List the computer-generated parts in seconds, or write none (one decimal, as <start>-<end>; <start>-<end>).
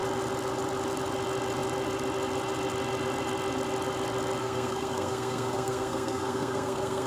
4.4-7.1